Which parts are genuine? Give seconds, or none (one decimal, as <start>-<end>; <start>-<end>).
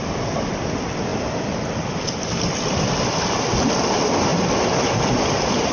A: 0.0-5.7